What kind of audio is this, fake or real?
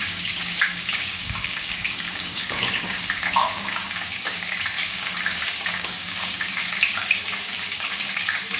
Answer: fake